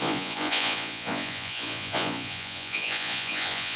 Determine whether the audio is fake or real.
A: fake